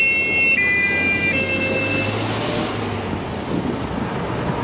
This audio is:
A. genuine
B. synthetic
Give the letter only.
A